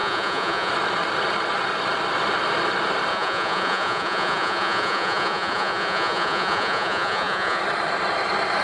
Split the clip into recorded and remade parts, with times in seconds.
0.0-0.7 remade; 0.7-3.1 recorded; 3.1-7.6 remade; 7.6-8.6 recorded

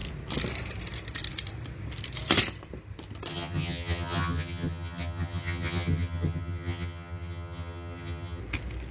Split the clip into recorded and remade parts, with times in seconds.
0.0-3.3 recorded; 3.3-8.4 remade; 8.4-8.9 recorded

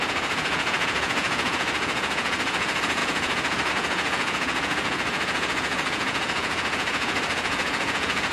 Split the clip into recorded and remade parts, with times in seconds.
0.0-8.3 remade

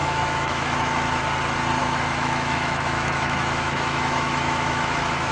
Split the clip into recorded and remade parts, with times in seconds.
0.0-1.2 remade; 1.2-1.8 recorded; 1.8-5.3 remade

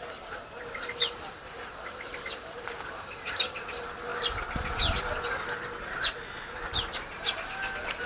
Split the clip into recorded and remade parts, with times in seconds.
0.0-4.1 remade; 4.1-7.1 recorded; 7.1-8.1 remade

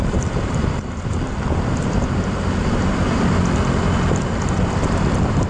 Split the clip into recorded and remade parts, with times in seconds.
0.0-3.2 remade; 3.2-5.5 recorded

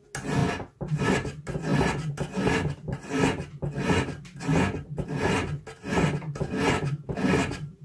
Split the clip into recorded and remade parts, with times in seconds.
0.0-7.8 recorded

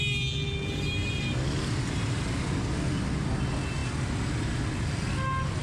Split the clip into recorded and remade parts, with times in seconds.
0.0-5.6 recorded